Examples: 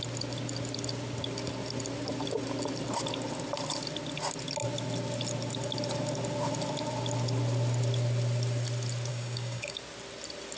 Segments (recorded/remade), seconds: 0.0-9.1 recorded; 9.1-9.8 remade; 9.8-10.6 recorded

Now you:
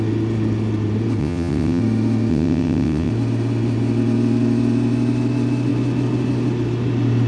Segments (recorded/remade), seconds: 0.0-1.2 recorded; 1.2-1.8 remade; 1.8-2.3 recorded; 2.3-3.1 remade; 3.1-7.3 recorded

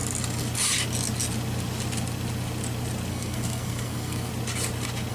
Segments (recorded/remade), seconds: 0.0-3.1 recorded; 3.1-4.3 remade; 4.3-5.1 recorded

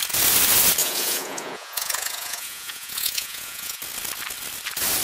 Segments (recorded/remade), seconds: 0.0-0.8 recorded; 0.8-3.8 remade; 3.8-5.0 recorded

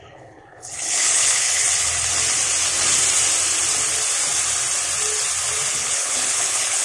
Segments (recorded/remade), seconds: 0.0-1.6 remade; 1.6-5.7 recorded; 5.7-6.8 remade

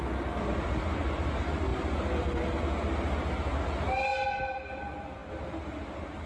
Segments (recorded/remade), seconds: 0.0-6.3 recorded

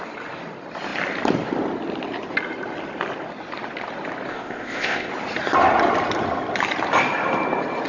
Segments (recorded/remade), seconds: 0.0-4.3 recorded; 4.3-5.1 remade; 5.1-7.9 recorded

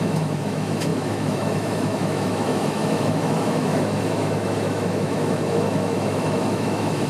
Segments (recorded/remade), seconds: 0.0-7.1 remade